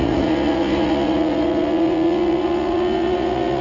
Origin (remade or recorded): remade